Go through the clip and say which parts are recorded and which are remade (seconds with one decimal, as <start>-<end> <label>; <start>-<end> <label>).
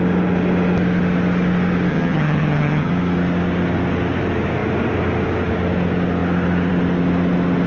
0.0-1.9 recorded; 1.9-2.9 remade; 2.9-7.7 recorded